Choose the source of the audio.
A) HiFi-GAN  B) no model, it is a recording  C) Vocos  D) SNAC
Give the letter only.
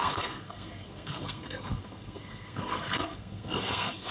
D